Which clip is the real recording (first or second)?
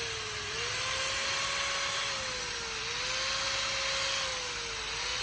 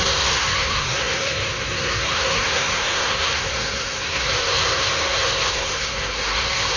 first